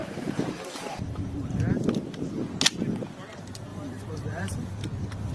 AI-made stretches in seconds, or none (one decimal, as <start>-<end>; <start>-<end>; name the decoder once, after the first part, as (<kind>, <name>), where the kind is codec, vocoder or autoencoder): 0.0-1.6 (vocoder, BigVGAN v2); 3.7-4.6